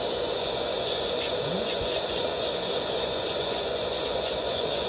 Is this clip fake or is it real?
fake